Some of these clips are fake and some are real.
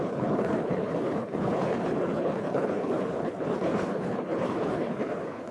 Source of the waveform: fake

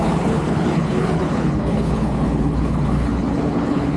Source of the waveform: fake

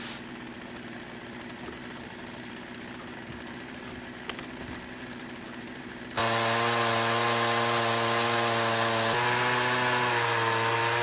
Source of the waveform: real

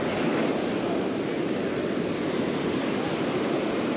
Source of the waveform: real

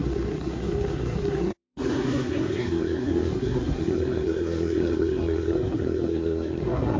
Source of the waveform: fake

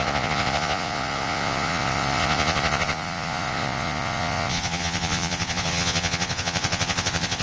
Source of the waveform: fake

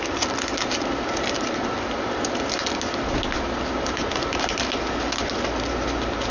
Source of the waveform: real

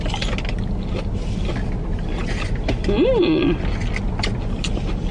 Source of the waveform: real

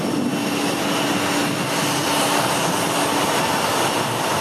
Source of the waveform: real